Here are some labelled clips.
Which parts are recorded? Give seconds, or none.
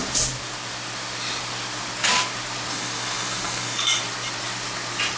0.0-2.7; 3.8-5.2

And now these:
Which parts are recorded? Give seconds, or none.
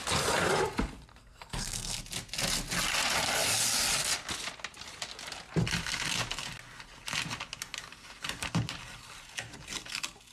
0.0-1.1; 2.0-10.3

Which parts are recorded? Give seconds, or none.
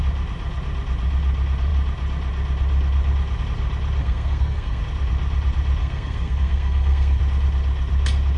0.0-4.0; 4.8-5.8; 7.2-8.4